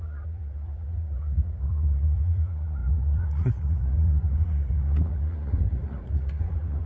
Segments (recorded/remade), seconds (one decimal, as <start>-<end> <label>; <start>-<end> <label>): 0.0-6.9 remade